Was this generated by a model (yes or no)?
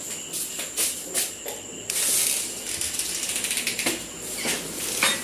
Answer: no